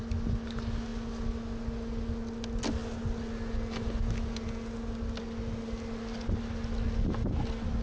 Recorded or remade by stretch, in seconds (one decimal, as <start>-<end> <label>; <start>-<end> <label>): 0.0-7.8 recorded